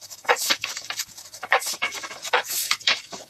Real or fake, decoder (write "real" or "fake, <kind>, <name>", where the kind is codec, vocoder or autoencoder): fake, codec, DAC